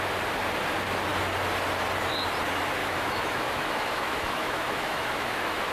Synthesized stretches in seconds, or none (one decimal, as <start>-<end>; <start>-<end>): 2.8-5.7